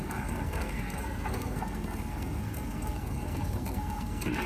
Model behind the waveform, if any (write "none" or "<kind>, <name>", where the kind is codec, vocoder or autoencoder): codec, SNAC